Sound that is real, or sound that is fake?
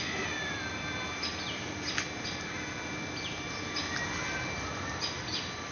real